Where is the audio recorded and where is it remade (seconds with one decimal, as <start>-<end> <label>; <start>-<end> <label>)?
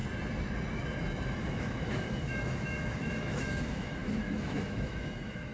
0.0-1.4 recorded; 1.4-5.5 remade